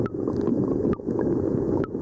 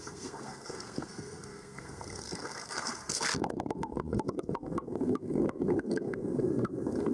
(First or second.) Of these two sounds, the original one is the first